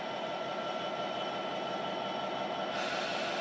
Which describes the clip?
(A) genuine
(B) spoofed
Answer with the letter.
A